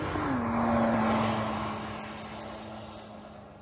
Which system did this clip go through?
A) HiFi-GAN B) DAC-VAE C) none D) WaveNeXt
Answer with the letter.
C